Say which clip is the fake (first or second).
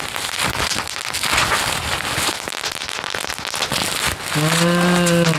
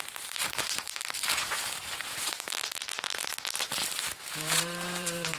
second